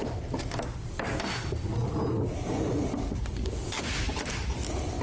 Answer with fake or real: real